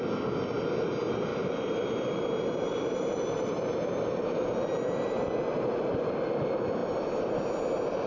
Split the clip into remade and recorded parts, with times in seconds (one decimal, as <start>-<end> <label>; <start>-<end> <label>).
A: 0.0-1.3 recorded; 1.3-2.2 remade; 2.2-2.7 recorded; 2.7-5.3 remade; 5.3-8.1 recorded